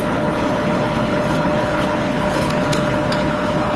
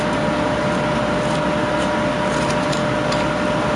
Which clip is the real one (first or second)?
second